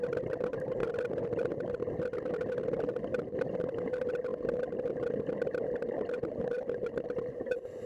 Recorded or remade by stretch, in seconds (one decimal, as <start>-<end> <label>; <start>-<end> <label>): 0.0-4.3 remade; 4.3-5.4 recorded; 5.4-7.9 remade